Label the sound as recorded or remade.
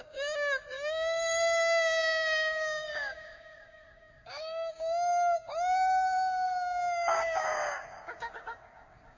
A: remade